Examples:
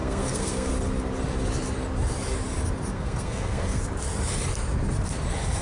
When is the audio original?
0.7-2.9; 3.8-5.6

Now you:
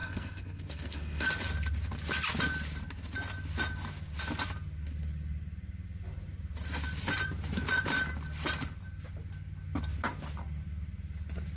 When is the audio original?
1.3-11.6

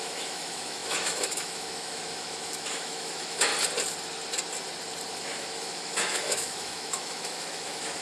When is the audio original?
3.5-5.1